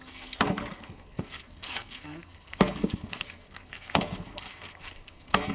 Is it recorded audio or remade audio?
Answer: remade